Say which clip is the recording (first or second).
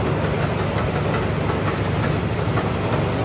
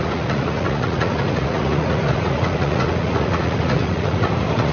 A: first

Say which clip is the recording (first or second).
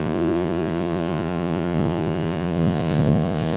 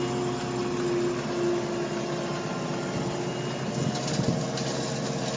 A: second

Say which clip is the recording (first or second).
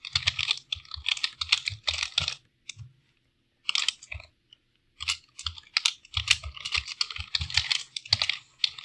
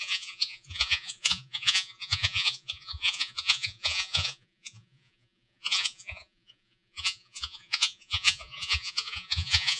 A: first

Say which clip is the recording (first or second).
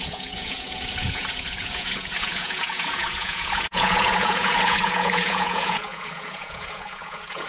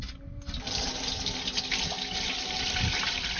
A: second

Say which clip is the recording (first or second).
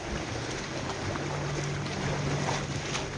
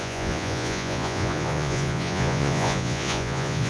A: first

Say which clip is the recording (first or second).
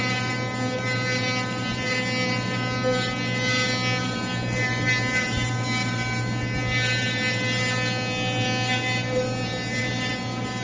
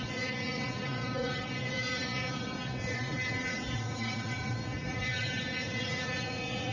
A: first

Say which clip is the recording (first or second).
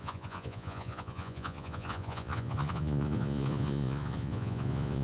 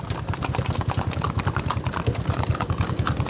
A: second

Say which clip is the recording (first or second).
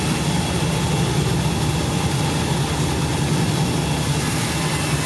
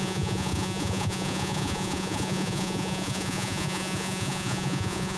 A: first